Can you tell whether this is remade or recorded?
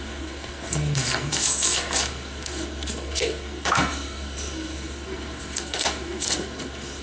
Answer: remade